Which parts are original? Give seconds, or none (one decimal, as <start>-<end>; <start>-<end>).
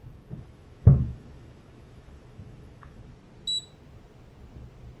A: 3.0-5.0